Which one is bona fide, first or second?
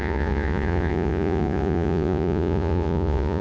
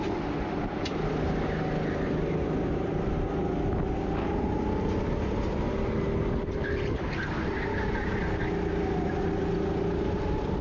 second